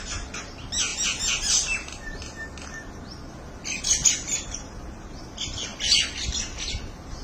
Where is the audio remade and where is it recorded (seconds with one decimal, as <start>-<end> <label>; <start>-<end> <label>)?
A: 0.0-7.2 recorded